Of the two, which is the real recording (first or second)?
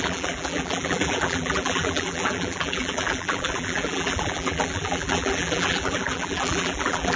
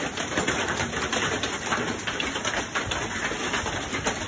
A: second